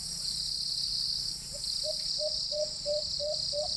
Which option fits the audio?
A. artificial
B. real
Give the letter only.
B